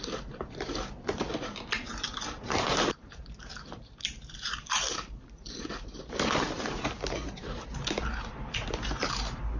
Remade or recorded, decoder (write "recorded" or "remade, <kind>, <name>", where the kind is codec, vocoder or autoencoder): remade, vocoder, BigVGAN v2